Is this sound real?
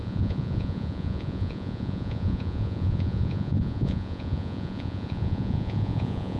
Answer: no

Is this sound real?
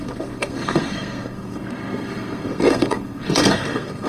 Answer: no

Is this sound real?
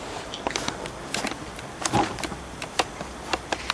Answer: yes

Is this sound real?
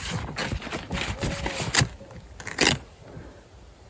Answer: yes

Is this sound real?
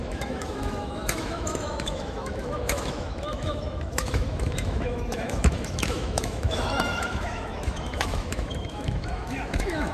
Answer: no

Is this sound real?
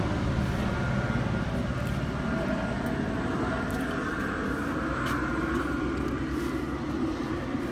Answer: yes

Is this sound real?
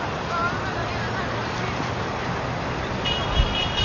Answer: yes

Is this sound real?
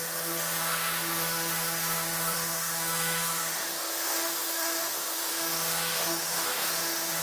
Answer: no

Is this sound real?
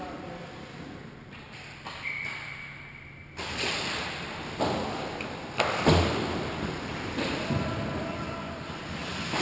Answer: yes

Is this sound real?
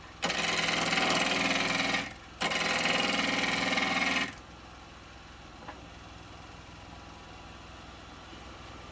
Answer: yes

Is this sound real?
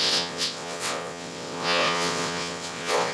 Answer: no